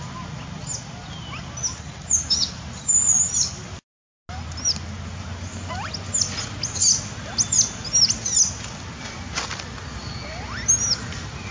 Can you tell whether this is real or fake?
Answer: real